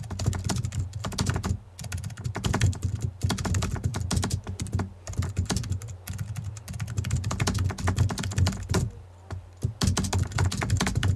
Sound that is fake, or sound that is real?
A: real